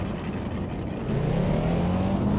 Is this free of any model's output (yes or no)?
yes